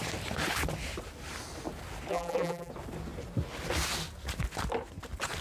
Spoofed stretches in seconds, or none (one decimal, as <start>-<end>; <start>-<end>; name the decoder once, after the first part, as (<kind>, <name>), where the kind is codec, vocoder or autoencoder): 2.1-2.7 (vocoder, BigVGAN v2)